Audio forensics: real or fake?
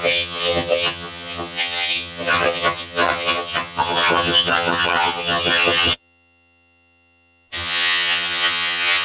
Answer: fake